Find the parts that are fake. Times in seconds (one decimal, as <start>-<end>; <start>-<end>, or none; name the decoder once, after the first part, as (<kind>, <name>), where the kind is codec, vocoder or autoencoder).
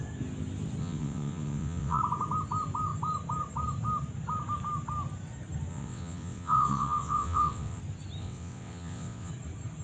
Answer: 0.8-2.0 (vocoder, WaveNeXt); 5.7-7.8; 8.2-9.3